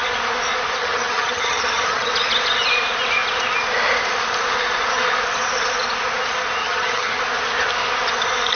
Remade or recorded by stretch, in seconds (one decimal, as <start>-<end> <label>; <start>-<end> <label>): 0.0-0.8 recorded; 0.8-2.1 remade; 2.1-6.6 recorded; 6.6-7.2 remade; 7.2-8.5 recorded

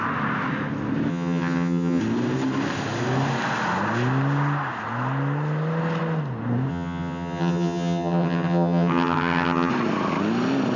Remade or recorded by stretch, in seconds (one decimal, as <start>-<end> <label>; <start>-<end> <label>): 0.0-1.1 recorded; 1.1-2.0 remade; 2.0-6.7 recorded; 6.7-9.7 remade; 9.7-10.8 recorded

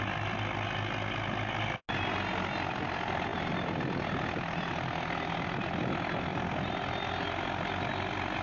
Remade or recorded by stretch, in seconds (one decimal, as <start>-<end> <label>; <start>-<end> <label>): 0.0-8.4 recorded

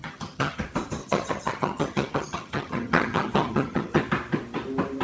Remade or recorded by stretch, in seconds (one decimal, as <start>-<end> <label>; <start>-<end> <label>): 0.0-0.6 remade; 0.6-1.0 recorded; 1.0-4.0 remade; 4.0-5.0 recorded